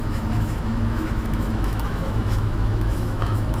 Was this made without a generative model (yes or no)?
no